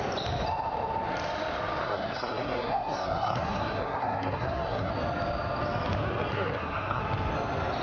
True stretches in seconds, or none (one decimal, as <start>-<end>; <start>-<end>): 0.0-1.8; 4.9-6.3; 7.0-7.8